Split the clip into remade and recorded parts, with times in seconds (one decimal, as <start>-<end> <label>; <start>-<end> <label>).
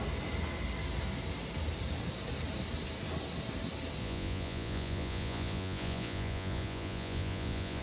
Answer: 0.0-4.0 recorded; 4.0-7.8 remade